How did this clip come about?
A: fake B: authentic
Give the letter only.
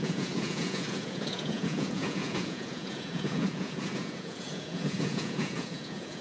A